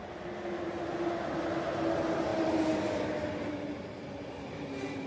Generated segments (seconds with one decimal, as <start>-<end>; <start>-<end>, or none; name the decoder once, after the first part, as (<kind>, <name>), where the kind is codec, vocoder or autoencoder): none